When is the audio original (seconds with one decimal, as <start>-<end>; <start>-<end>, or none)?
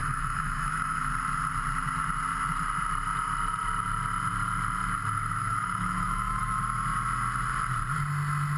1.1-5.4; 6.6-8.6